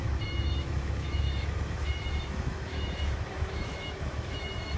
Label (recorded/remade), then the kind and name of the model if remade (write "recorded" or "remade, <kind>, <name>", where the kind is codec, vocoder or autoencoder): remade, autoencoder, DAC-VAE